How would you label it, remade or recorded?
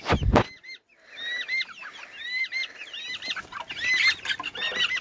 recorded